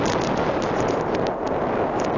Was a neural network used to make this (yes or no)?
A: no